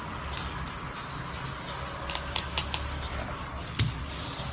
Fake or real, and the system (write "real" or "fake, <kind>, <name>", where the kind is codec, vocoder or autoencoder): real